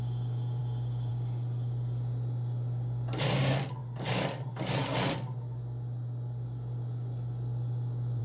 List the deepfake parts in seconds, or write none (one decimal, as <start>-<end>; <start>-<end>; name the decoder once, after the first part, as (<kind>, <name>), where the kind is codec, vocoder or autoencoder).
none